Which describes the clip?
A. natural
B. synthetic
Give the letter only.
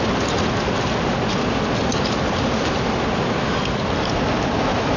A